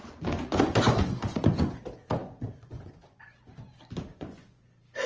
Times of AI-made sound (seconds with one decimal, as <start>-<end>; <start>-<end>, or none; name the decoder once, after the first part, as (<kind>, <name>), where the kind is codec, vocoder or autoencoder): 0.0-1.8 (vocoder, Vocos); 2.2-3.2; 4.1-4.6